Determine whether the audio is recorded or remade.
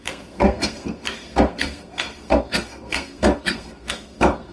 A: remade